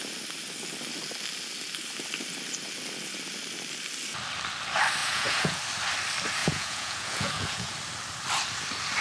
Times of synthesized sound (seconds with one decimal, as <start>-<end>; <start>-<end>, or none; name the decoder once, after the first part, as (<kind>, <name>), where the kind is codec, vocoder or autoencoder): 5.0-5.6 (vocoder, Vocos); 6.4-7.7

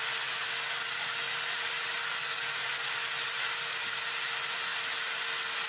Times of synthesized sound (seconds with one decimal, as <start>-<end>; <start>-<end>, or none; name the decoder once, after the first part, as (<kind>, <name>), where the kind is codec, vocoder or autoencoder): none

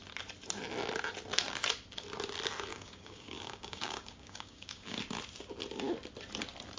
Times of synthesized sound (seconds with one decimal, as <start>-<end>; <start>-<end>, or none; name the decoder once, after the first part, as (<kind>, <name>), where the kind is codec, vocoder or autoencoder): 2.7-5.0 (codec, DAC)

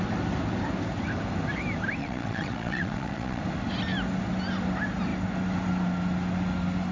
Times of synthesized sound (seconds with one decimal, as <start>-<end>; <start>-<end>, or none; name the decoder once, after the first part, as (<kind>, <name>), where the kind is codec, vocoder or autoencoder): 2.0-3.4 (vocoder, WaveNeXt)

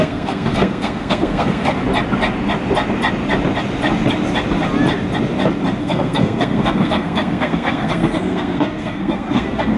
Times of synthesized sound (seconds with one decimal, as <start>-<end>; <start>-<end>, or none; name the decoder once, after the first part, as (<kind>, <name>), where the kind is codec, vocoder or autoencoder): 0.0-1.8 (codec, SNAC); 5.8-9.8

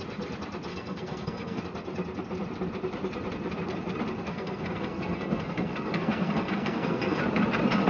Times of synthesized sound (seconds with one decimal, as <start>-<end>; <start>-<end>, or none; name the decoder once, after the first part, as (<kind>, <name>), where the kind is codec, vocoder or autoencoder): 0.7-1.6 (codec, SNAC); 4.3-7.2

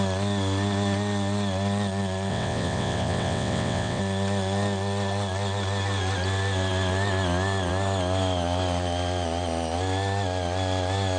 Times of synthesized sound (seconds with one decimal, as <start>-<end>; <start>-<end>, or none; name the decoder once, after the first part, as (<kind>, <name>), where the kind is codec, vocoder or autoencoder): 2.3-4.0 (vocoder, WaveNeXt)

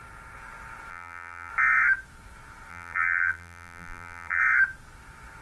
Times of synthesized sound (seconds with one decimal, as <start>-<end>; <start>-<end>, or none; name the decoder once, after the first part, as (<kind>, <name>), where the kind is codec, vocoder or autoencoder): 0.9-1.5 (vocoder, BigVGAN v2); 2.7-4.4